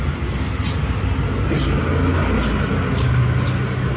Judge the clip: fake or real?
real